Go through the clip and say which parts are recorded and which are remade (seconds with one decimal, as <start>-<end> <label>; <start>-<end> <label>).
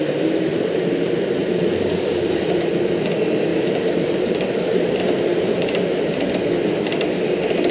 0.0-0.5 recorded; 0.5-3.0 remade; 3.0-3.5 recorded; 3.5-6.3 remade; 6.3-7.7 recorded